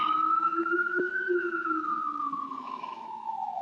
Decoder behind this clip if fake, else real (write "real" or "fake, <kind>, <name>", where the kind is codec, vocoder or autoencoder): fake, autoencoder, DAC-VAE